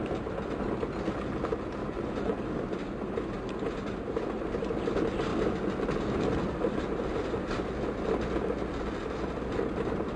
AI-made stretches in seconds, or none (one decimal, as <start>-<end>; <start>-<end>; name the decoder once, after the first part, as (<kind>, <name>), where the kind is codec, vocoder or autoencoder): 1.8-2.4 (vocoder, Vocos)